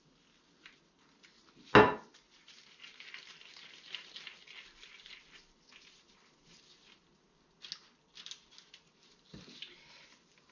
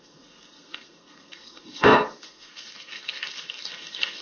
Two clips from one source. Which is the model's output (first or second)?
second